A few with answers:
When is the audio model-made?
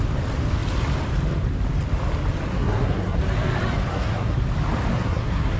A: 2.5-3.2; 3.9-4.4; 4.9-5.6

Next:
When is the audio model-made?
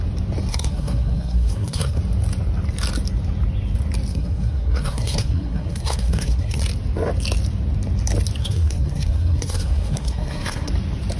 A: 0.5-2.0; 4.1-6.6; 8.4-10.7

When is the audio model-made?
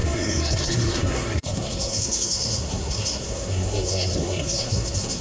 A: 0.0-5.2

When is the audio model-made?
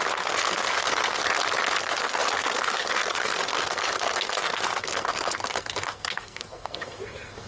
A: 0.0-1.2; 1.8-7.5